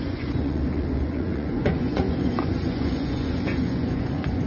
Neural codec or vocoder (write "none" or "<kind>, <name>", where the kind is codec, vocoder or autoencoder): vocoder, Vocos